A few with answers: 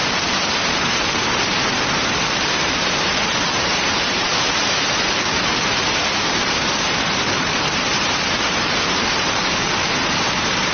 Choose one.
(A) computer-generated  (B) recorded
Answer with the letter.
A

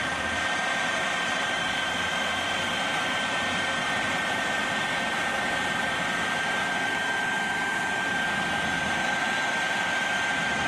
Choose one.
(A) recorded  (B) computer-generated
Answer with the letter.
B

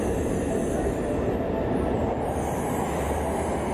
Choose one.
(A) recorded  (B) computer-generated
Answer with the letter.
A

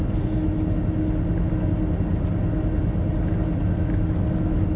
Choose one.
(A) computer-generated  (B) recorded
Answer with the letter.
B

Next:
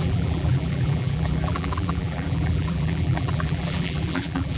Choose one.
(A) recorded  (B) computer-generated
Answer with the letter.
B